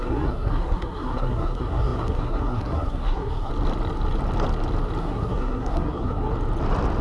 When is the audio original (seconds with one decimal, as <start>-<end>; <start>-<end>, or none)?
3.5-5.0; 6.3-7.0